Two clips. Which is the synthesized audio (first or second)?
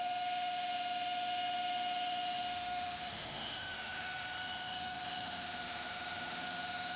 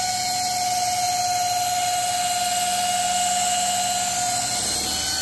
first